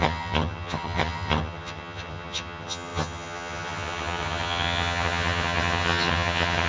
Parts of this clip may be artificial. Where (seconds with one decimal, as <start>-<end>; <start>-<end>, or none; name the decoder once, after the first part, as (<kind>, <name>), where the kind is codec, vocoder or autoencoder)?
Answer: 0.0-6.7 (vocoder, HiFi-GAN)